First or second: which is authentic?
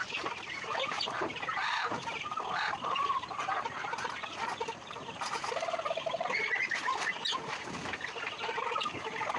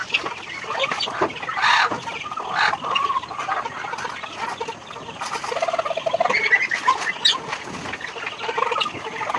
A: second